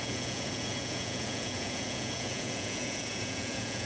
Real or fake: fake